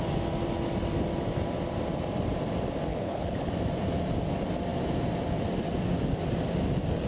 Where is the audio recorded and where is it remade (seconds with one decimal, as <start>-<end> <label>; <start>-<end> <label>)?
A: 0.0-2.9 recorded; 2.9-3.5 remade; 3.5-7.1 recorded